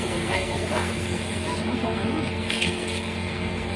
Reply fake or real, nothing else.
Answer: fake